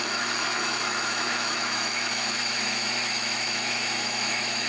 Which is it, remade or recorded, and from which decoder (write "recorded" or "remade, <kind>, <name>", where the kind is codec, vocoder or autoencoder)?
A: remade, autoencoder, DAC-VAE